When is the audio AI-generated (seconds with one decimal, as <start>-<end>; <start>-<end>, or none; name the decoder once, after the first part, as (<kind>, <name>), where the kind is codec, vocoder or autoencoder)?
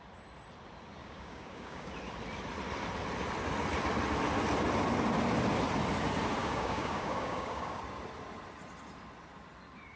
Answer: 1.0-1.9 (codec, DAC); 6.4-7.8